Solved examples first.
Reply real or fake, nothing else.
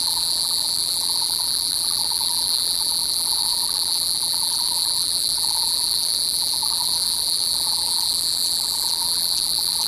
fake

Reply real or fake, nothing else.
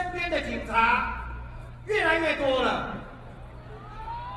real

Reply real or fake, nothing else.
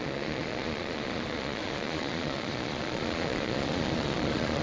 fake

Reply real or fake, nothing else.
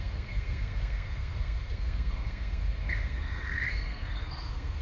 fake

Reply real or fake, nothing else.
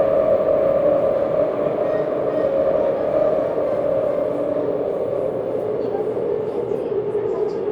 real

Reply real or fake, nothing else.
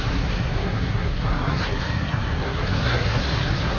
fake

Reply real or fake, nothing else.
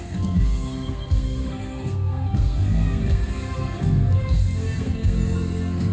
fake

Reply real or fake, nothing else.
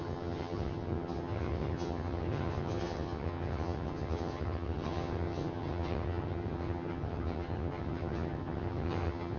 fake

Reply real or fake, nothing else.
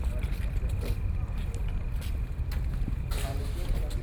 real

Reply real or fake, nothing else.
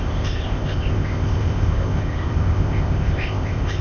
fake